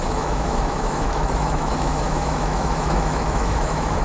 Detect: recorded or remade remade